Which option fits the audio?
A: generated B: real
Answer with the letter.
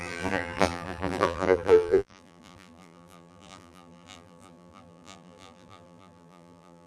A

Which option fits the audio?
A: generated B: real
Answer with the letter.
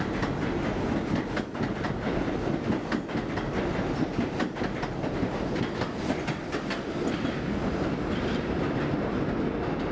B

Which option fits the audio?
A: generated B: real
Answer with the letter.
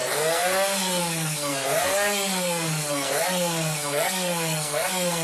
A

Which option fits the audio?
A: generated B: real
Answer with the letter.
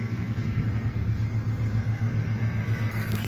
A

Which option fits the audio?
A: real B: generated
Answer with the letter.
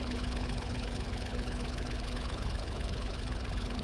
B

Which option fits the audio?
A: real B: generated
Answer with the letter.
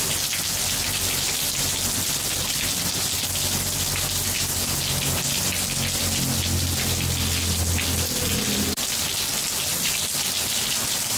A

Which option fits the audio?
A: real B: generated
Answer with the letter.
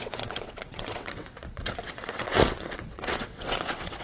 B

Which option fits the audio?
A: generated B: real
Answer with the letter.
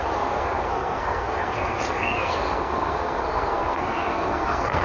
A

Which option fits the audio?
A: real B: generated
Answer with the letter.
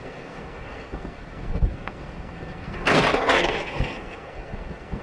B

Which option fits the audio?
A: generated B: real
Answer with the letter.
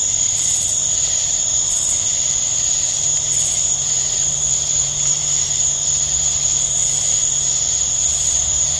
A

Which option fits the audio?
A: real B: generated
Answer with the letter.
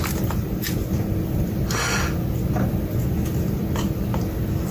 A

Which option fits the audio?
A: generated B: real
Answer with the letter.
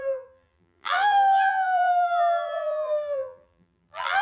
A